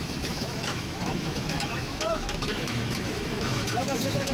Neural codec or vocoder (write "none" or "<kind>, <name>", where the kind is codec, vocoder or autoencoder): autoencoder, DAC-VAE